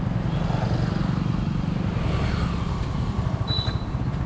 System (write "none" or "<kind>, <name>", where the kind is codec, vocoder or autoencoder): none